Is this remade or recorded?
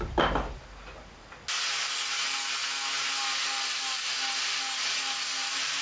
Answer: recorded